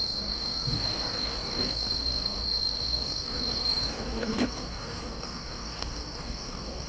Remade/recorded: remade